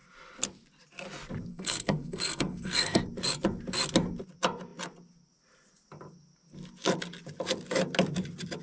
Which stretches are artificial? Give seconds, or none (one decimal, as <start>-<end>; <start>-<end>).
1.5-3.0